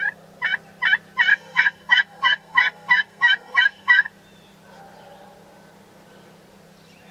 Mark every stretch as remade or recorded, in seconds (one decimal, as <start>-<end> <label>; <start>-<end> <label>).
0.0-1.3 recorded; 1.3-4.1 remade; 4.1-7.1 recorded

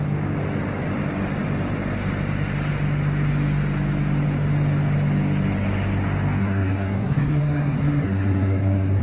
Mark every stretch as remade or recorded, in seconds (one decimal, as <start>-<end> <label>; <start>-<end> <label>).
0.0-6.4 recorded; 6.4-9.0 remade